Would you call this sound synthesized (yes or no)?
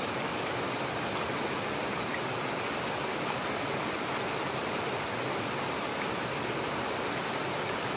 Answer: no